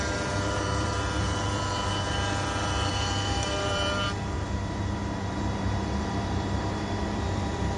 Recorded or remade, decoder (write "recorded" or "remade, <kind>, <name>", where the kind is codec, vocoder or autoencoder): remade, vocoder, BigVGAN v2